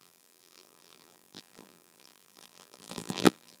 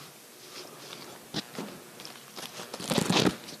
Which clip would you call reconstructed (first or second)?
first